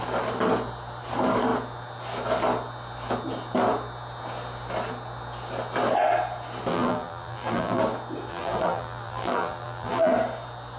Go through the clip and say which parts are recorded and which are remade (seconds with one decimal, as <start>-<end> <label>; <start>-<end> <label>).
0.0-6.7 recorded; 6.7-7.8 remade; 7.8-8.3 recorded; 8.3-10.1 remade; 10.1-10.8 recorded